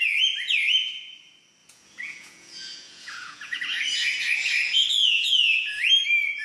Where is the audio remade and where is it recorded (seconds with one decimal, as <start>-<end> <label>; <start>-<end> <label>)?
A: 0.0-1.6 recorded; 1.6-3.6 remade; 3.6-5.0 recorded; 5.0-5.9 remade; 5.9-6.4 recorded